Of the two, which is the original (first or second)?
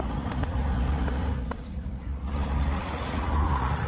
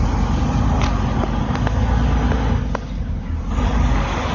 second